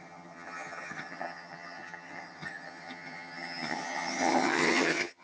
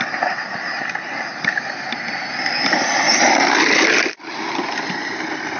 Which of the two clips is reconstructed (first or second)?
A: first